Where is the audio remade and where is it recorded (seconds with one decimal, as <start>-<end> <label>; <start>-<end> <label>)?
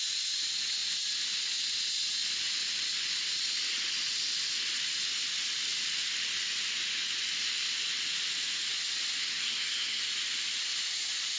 0.0-9.2 recorded; 9.2-10.0 remade; 10.0-11.4 recorded